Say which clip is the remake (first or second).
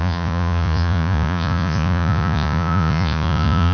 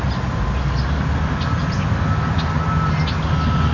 first